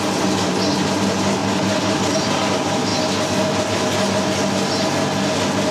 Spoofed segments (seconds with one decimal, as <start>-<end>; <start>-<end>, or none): none